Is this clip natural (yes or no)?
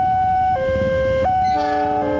yes